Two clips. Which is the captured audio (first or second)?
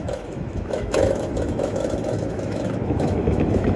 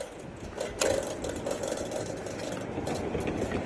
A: second